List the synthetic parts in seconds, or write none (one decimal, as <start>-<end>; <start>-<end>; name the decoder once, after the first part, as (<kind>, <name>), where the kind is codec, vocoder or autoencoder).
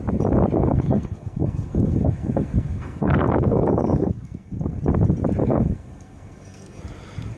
0.6-4.8 (codec, SNAC); 5.4-6.8